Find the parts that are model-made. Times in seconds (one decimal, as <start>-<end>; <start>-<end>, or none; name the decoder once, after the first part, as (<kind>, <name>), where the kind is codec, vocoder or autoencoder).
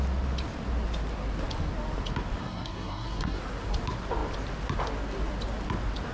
2.4-3.4 (codec, SNAC)